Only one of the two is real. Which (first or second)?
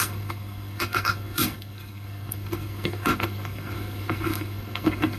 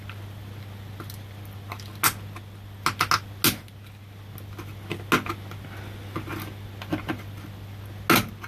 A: second